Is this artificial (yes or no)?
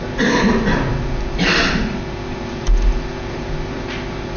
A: no